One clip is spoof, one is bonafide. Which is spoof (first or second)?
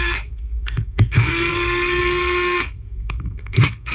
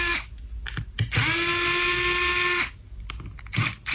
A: first